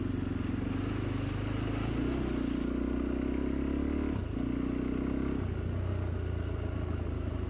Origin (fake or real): real